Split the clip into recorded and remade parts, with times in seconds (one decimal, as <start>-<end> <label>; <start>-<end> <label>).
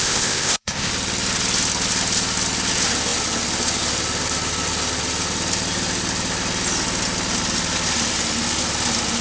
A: 0.0-0.9 remade; 0.9-9.2 recorded